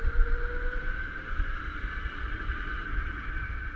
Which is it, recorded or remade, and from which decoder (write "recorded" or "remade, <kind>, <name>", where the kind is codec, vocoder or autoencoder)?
recorded